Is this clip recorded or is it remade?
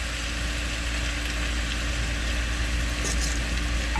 recorded